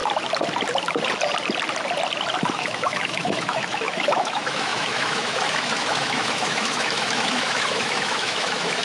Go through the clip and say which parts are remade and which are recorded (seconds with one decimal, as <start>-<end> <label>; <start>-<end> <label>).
0.0-2.5 recorded; 2.5-8.8 remade